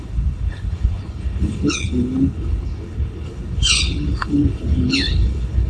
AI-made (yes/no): yes